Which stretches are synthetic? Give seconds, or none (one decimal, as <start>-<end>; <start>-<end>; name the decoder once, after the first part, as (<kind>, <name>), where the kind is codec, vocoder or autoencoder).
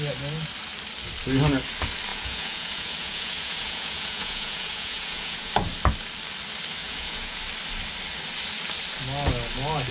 2.1-5.5 (vocoder, Vocos); 6.8-7.4